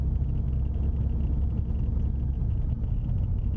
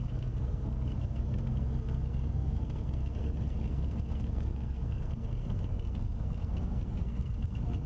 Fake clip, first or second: second